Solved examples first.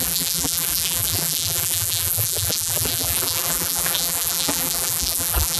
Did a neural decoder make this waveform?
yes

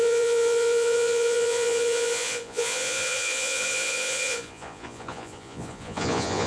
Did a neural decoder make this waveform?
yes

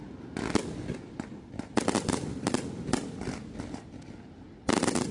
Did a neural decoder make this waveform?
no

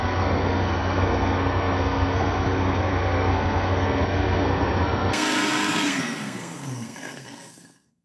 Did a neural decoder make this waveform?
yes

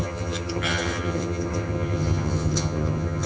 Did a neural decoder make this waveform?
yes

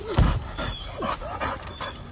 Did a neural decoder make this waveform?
no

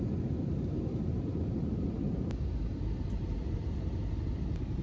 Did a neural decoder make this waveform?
yes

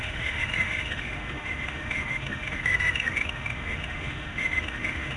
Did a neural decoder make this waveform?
yes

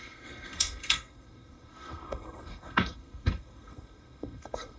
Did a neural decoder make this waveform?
yes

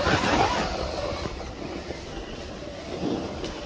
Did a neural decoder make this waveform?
no